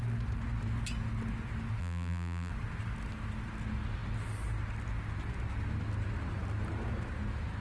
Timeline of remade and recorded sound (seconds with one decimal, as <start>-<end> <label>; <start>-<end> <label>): 0.0-1.8 recorded; 1.8-2.5 remade; 2.5-7.6 recorded